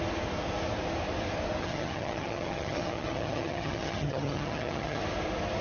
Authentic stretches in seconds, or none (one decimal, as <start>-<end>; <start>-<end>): 0.0-1.6; 5.0-5.6